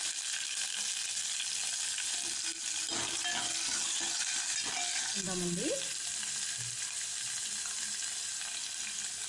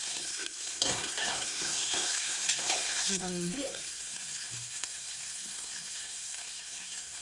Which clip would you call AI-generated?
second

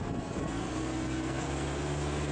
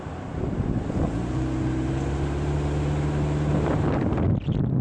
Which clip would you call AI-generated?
first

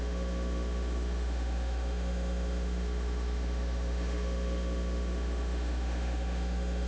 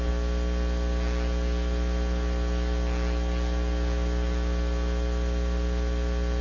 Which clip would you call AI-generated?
first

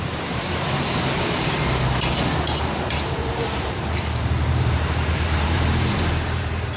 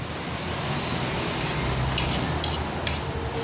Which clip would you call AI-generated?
first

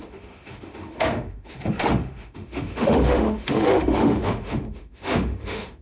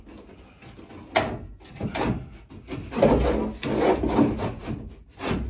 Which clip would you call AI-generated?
first